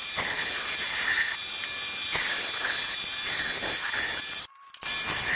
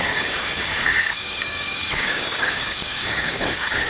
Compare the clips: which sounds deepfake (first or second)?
second